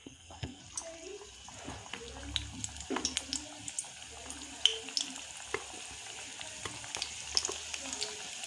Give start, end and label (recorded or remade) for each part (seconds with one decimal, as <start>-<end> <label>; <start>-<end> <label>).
0.0-0.6 remade; 0.6-8.5 recorded